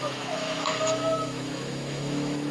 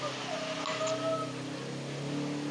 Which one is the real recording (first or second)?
second